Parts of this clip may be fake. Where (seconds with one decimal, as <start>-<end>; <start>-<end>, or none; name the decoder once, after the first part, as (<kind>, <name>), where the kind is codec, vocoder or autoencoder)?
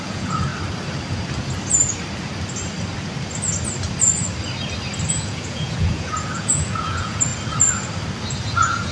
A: 0.0-0.5 (vocoder, Vocos); 5.1-7.3; 8.4-8.9